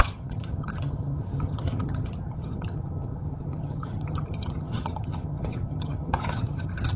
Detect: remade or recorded remade